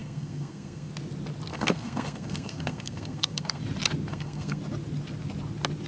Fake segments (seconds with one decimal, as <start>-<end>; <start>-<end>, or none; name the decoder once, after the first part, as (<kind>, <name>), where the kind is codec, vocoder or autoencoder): 0.0-0.9 (codec, SNAC); 1.5-3.6; 4.1-4.6